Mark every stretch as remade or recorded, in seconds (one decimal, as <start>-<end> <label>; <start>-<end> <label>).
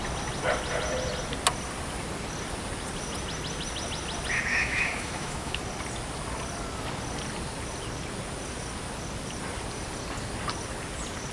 0.0-4.5 recorded; 4.5-5.6 remade; 5.6-11.3 recorded